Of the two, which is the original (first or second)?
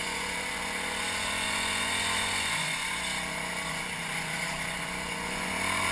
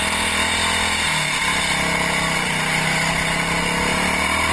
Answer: second